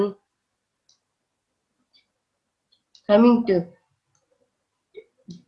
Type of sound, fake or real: real